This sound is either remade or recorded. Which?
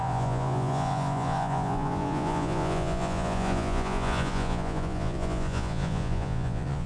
remade